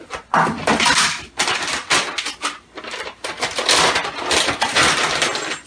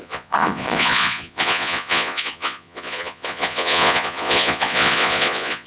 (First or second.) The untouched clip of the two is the first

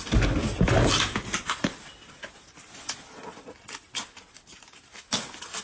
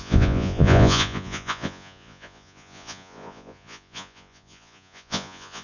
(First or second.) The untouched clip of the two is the first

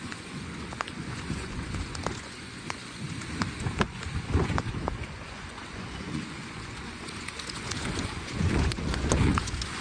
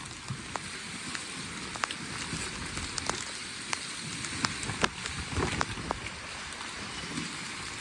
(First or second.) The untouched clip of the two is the second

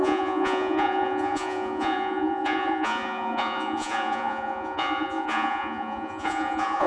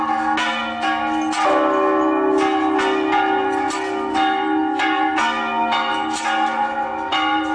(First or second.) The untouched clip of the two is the second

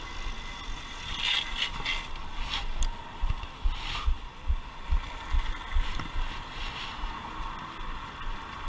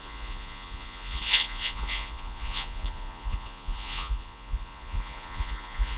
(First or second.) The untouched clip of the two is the first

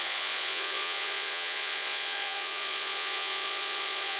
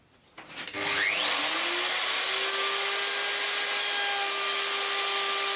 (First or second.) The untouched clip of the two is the second